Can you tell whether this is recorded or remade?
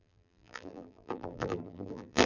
remade